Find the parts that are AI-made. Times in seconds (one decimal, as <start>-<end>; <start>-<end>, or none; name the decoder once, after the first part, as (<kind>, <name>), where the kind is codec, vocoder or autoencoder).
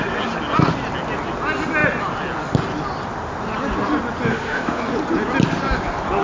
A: 4.3-4.8 (autoencoder, DAC-VAE)